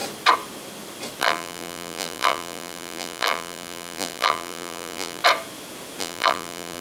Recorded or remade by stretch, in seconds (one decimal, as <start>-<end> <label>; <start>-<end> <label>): 0.0-1.2 recorded; 1.2-5.2 remade; 5.2-6.0 recorded; 6.0-6.8 remade